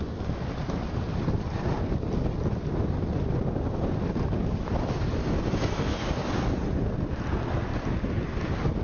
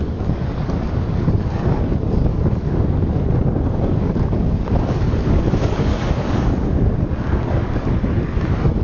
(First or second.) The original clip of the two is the first